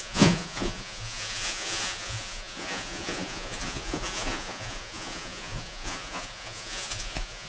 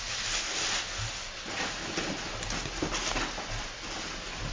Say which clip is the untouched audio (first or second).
second